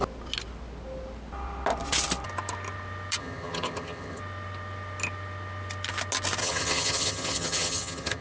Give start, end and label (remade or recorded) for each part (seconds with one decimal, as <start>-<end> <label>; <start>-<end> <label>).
0.0-3.2 recorded; 3.2-4.2 remade; 4.2-6.4 recorded; 6.4-8.2 remade